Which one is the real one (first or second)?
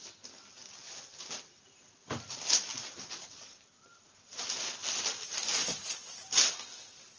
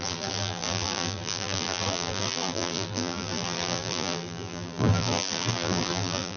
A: first